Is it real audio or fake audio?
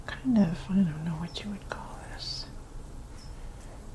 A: real